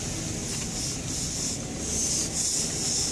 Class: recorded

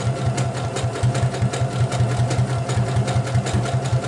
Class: recorded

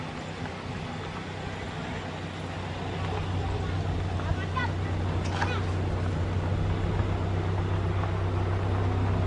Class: recorded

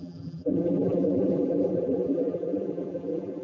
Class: remade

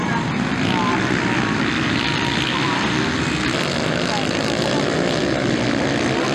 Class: recorded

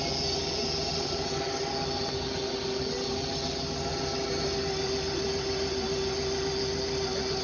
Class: recorded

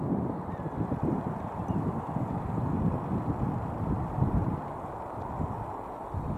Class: recorded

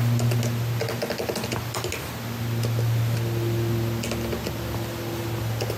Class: recorded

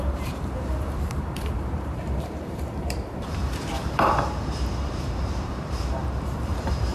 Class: remade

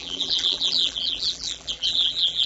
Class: remade